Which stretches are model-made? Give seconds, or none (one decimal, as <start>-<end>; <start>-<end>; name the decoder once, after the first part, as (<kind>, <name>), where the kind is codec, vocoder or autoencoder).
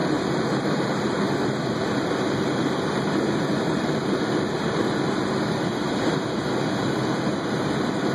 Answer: 0.0-4.9 (vocoder, BigVGAN v2)